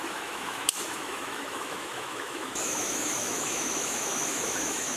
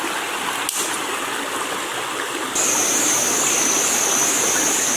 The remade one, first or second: first